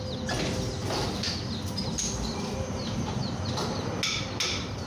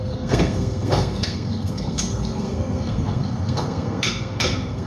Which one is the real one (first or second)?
first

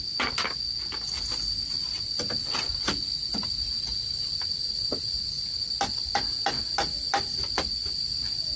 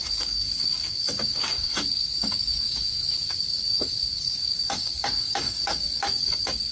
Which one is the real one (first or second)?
first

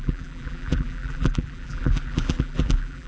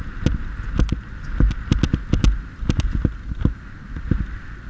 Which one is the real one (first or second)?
second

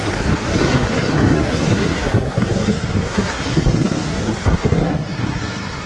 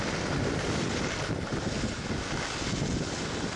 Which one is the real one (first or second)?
second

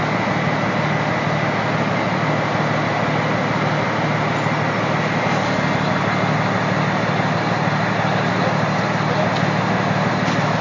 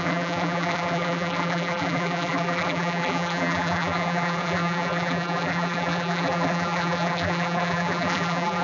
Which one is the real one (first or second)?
first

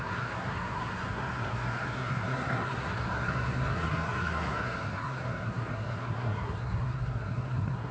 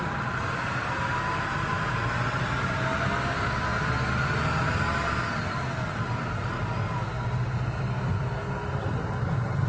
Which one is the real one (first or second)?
second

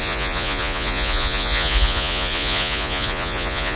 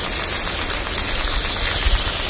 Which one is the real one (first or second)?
second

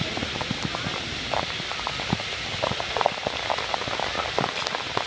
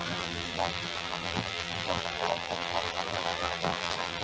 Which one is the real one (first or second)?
first